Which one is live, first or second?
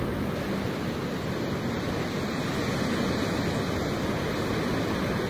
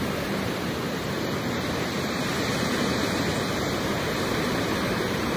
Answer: first